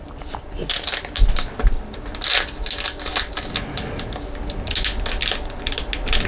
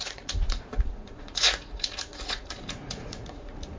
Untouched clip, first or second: first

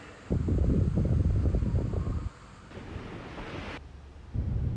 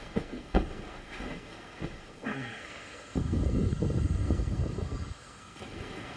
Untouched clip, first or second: first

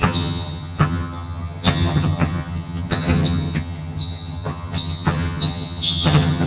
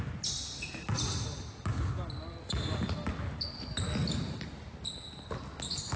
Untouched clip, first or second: second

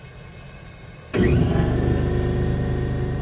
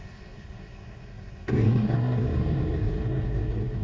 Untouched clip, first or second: first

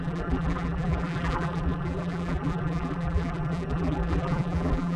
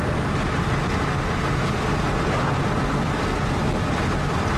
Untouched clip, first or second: second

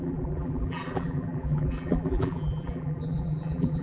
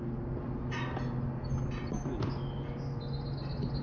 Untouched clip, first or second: second